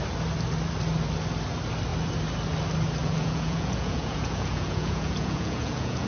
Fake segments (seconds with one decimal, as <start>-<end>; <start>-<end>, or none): 3.0-6.1